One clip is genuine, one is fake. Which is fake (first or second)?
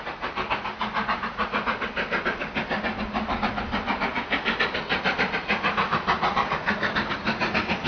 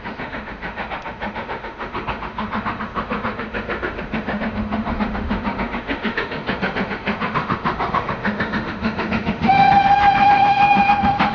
second